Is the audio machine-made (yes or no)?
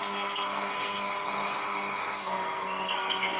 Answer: yes